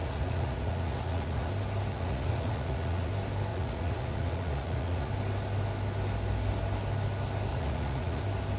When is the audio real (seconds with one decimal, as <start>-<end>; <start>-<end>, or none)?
1.5-1.9; 3.1-3.5; 5.1-7.5; 8.2-8.6